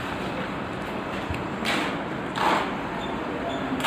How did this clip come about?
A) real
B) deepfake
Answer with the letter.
A